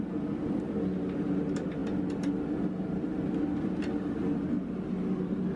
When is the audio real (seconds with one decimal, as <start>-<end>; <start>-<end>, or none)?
0.0-5.6